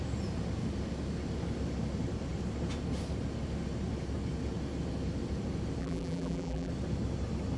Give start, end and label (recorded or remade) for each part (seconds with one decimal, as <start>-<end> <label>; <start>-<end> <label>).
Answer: 0.0-5.8 recorded; 5.8-6.7 remade; 6.7-7.6 recorded